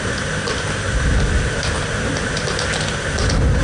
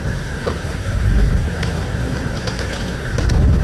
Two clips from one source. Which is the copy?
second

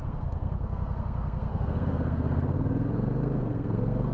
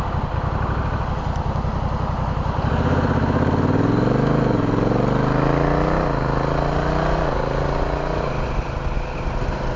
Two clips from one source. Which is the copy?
first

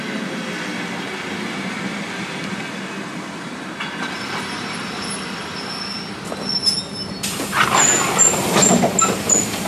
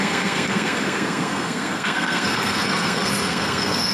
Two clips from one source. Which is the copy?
second